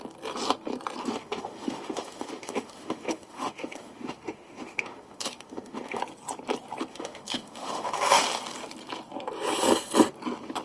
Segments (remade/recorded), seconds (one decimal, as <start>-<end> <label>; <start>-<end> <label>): 0.0-1.0 recorded; 1.0-6.0 remade; 6.0-6.9 recorded; 6.9-8.2 remade; 8.2-10.6 recorded